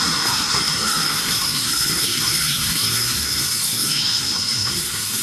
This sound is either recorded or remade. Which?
remade